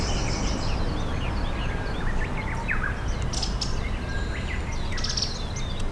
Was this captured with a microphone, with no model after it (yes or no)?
yes